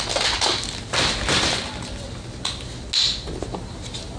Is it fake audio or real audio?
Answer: real